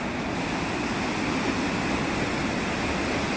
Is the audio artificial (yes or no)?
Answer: no